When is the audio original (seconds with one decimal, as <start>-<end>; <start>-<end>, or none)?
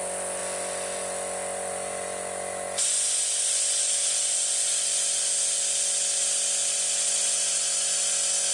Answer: 0.0-8.5